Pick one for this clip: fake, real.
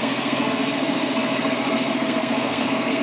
fake